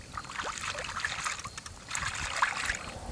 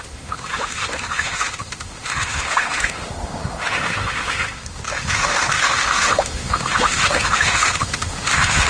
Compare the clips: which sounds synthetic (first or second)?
second